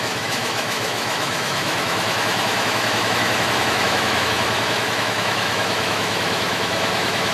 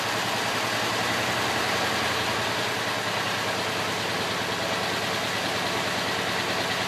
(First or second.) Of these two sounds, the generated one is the first